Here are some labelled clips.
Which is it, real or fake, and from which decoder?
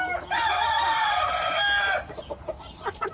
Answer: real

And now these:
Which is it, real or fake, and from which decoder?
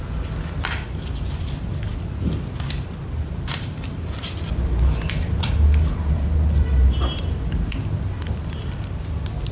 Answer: real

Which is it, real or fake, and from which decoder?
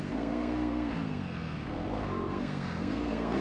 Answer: fake, codec, SNAC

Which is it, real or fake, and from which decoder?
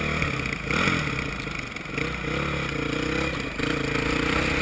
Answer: real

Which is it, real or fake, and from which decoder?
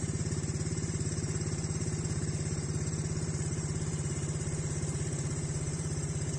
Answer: fake, vocoder, BigVGAN v2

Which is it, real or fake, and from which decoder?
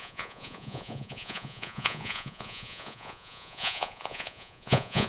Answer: fake, vocoder, Vocos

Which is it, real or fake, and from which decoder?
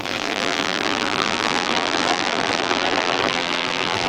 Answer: fake, vocoder, BigVGAN v2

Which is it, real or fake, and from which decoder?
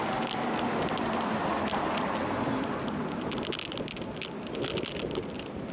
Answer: real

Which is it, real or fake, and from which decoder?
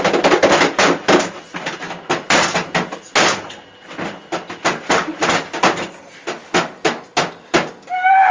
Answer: real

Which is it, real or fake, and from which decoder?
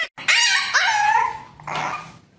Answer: real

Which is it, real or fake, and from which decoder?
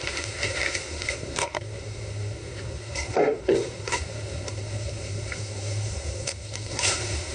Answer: fake, codec, SNAC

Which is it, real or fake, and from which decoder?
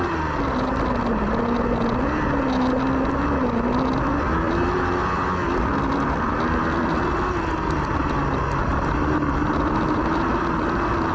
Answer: real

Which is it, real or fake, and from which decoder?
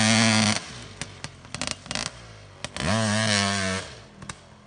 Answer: real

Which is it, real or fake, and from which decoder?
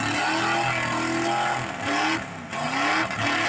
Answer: real